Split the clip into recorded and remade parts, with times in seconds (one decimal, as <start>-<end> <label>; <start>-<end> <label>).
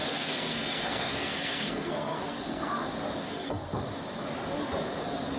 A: 0.0-2.7 remade; 2.7-3.2 recorded; 3.2-3.7 remade; 3.7-5.4 recorded